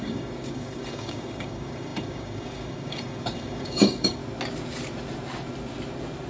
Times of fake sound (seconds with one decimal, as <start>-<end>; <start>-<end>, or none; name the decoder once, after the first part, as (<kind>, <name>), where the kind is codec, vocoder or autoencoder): 0.0-4.2 (codec, DAC)